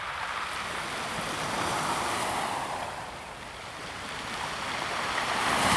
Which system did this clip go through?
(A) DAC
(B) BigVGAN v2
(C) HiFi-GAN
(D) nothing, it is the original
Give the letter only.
D